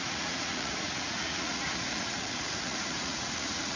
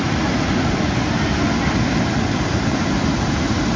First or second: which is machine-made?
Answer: first